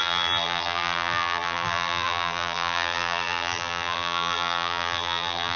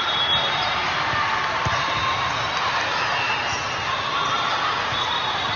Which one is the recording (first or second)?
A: second